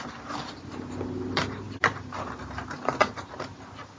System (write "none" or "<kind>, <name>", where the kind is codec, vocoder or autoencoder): none